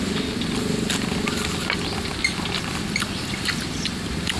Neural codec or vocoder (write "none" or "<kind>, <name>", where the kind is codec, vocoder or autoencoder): none